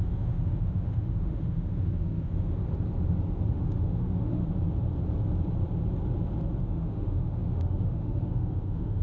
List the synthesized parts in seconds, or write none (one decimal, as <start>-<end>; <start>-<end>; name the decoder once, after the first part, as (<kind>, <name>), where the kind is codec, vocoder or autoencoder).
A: 0.0-2.6 (autoencoder, DAC-VAE); 3.5-4.4; 6.6-9.0